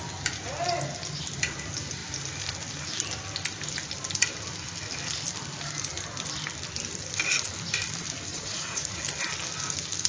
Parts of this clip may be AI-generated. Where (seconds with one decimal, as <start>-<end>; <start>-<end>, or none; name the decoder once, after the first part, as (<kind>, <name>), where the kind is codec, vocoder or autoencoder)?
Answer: 8.3-9.0 (vocoder, Vocos)